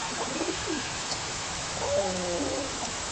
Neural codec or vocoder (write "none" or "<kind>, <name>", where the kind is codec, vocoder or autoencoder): autoencoder, DAC-VAE